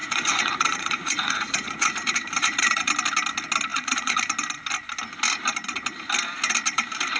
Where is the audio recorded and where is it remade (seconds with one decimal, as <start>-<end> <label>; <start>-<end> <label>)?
0.0-2.9 remade; 2.9-3.7 recorded; 3.7-4.2 remade; 4.2-7.2 recorded